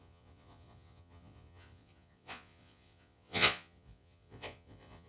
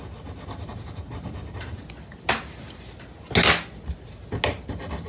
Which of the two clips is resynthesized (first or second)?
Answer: first